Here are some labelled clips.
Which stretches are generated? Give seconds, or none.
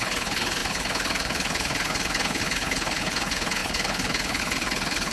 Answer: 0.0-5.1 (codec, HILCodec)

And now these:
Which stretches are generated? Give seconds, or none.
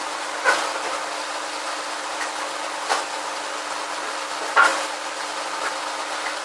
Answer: none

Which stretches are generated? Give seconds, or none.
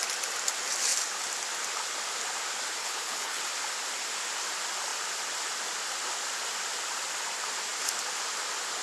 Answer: 2.8-3.4 (codec, HILCodec)